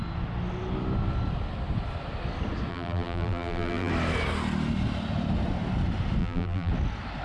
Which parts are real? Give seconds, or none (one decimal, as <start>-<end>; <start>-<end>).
0.0-2.7; 3.9-6.2; 6.7-7.2